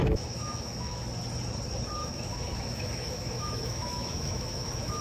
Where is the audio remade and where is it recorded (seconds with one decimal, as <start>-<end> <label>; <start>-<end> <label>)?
0.0-1.0 remade; 1.0-2.0 recorded; 2.0-5.0 remade